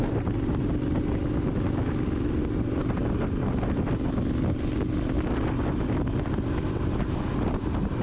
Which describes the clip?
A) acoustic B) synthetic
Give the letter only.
A